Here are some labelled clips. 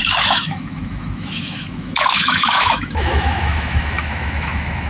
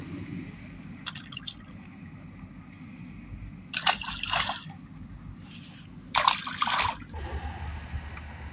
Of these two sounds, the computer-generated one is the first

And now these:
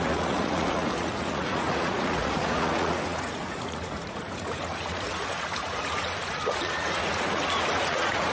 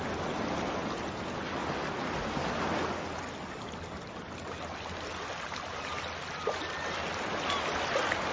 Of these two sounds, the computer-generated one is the first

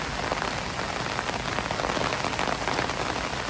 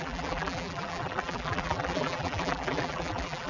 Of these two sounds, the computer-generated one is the second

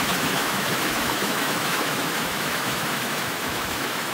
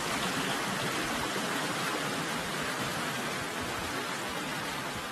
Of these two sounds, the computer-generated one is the first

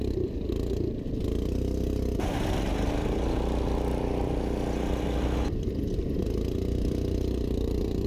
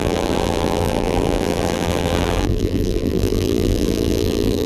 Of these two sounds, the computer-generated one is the second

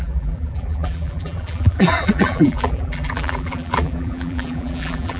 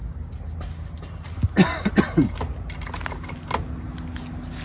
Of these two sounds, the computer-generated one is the first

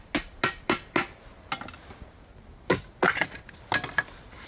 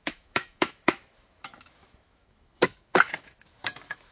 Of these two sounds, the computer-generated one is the second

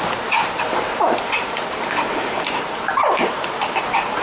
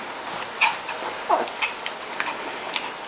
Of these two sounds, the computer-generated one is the first